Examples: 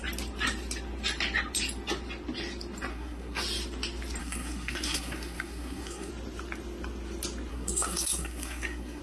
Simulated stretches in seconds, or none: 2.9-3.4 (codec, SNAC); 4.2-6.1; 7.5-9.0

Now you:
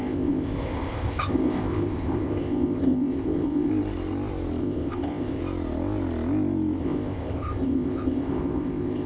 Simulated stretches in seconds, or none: 0.0-3.7 (codec, ZipCodec); 4.6-5.4; 6.8-9.1

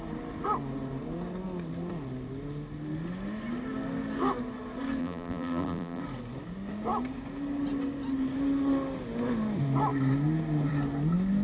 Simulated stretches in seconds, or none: 5.0-6.0 (vocoder, BigVGAN v2)

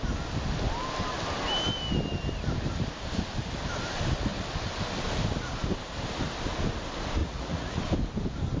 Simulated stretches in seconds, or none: 7.2-7.8 (vocoder, Vocos)

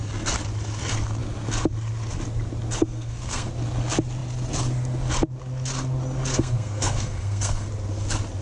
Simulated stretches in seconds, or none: 2.8-3.5 (codec, SNAC); 6.3-7.7

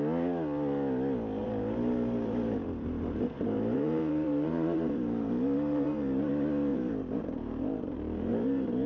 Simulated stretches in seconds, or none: 1.4-6.3 (vocoder, BigVGAN v2); 6.7-8.9

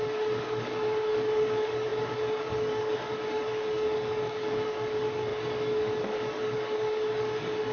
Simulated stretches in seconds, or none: 0.0-7.7 (codec, DAC)

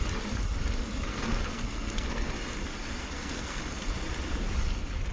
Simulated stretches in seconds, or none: 1.1-2.3 (codec, SNAC); 3.0-3.6